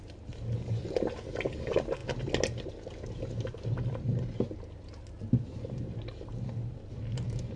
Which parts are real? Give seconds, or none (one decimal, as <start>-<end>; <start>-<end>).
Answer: 0.0-7.6